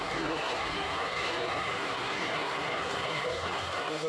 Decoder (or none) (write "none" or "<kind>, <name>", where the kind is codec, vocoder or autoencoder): codec, SNAC